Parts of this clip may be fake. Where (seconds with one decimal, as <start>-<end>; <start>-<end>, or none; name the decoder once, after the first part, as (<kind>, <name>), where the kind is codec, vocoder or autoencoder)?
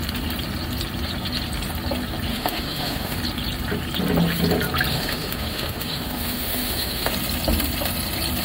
2.3-3.2 (autoencoder, DAC-VAE); 4.9-7.1